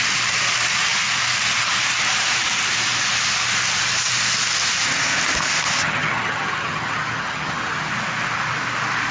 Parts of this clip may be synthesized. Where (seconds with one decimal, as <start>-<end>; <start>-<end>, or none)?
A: 5.8-7.9